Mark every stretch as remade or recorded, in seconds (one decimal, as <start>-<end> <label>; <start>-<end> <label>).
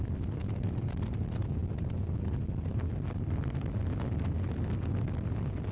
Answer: 0.0-5.7 recorded